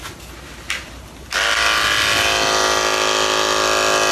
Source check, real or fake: real